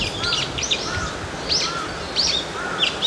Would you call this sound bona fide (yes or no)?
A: yes